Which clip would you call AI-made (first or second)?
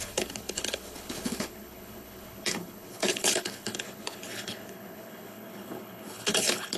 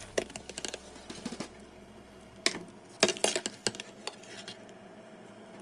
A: first